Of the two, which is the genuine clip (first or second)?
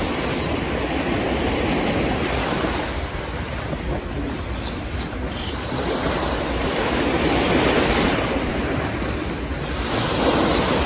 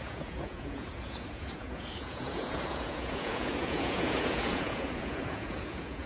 first